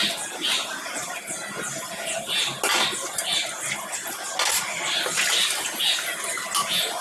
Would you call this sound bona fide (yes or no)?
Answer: yes